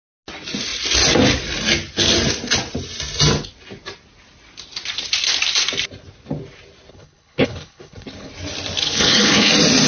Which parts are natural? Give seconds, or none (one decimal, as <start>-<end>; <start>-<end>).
0.0-6.9; 8.3-8.8; 9.5-9.9